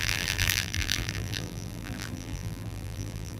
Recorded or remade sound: remade